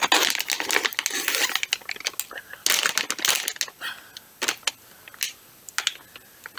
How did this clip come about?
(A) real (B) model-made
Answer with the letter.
A